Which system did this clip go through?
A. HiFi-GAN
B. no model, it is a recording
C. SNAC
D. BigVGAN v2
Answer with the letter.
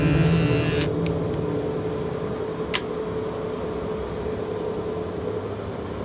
B